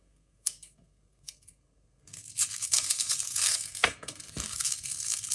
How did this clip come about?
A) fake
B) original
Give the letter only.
A